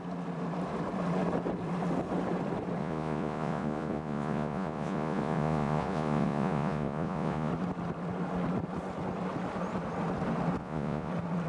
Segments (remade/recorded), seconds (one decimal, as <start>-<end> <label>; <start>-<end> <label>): 0.0-2.8 recorded; 2.8-7.5 remade; 7.5-10.6 recorded; 10.6-11.1 remade; 11.1-11.5 recorded